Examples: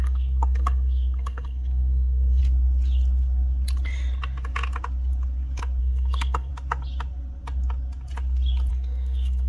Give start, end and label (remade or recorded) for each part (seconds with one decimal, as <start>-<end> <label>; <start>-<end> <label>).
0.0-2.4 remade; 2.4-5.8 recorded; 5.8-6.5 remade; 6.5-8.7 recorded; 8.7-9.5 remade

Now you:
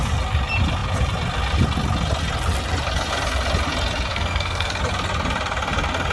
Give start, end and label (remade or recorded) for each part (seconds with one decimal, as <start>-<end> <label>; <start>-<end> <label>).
0.0-4.1 recorded; 4.1-4.8 remade; 4.8-6.1 recorded

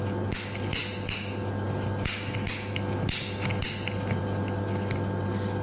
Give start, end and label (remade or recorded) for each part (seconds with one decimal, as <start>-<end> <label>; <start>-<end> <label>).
0.0-5.6 recorded